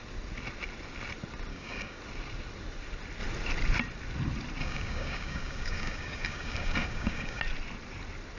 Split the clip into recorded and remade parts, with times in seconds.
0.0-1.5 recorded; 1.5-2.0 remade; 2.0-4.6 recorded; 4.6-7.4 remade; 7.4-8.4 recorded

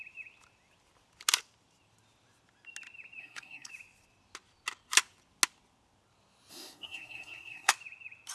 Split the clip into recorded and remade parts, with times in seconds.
0.0-3.2 recorded; 3.2-3.7 remade; 3.7-6.5 recorded; 6.5-7.7 remade; 7.7-8.3 recorded

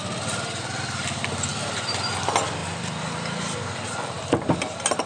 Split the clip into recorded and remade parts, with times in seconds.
0.0-5.1 recorded

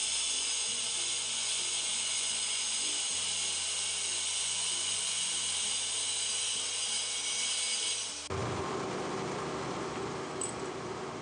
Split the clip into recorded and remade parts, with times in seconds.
0.0-2.9 remade; 2.9-4.1 recorded; 4.1-5.3 remade; 5.3-11.2 recorded

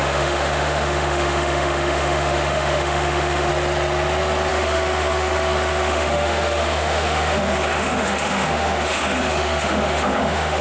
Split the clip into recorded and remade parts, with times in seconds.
0.0-3.5 remade; 3.5-4.5 recorded; 4.5-10.6 remade

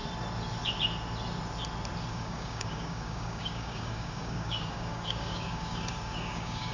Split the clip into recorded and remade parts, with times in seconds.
0.0-2.1 recorded; 2.1-6.7 remade